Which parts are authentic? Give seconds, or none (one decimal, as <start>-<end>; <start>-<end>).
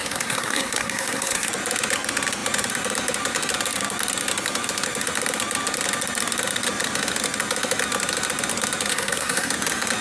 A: 1.5-8.9; 9.5-10.0